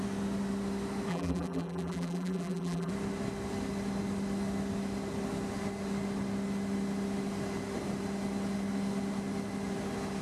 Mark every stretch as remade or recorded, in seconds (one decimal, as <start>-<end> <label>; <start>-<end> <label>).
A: 0.0-1.1 recorded; 1.1-2.9 remade; 2.9-10.2 recorded